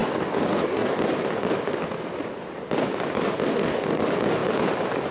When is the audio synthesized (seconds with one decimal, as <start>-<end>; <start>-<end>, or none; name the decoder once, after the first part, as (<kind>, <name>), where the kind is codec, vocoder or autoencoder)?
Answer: 0.0-1.0 (codec, DAC); 3.5-4.0